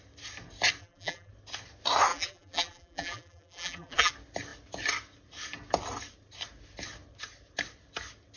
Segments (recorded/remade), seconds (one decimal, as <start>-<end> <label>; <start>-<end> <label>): 0.0-0.8 recorded; 0.8-1.3 remade; 1.3-2.1 recorded; 2.1-4.1 remade; 4.1-8.4 recorded